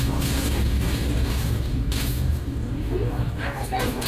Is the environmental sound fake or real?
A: fake